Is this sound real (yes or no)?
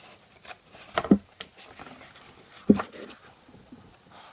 yes